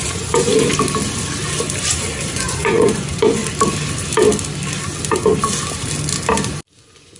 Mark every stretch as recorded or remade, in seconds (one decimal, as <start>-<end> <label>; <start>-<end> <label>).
0.0-0.5 remade; 0.5-2.3 recorded; 2.3-3.4 remade; 3.4-6.8 recorded; 6.8-7.2 remade